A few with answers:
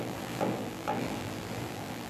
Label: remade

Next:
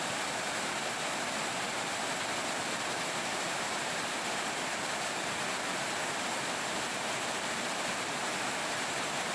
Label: remade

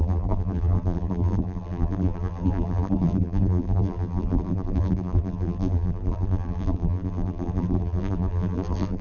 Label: remade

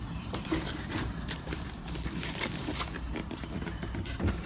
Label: remade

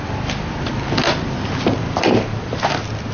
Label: recorded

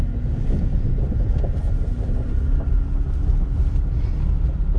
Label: recorded